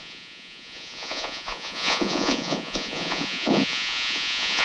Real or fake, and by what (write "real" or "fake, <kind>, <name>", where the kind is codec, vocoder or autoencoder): fake, vocoder, Vocos